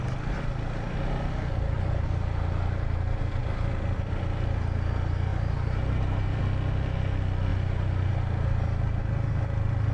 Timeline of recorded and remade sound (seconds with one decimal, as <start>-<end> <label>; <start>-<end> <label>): 0.0-5.3 recorded; 5.3-6.4 remade; 6.4-9.9 recorded